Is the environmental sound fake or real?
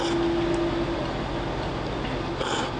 real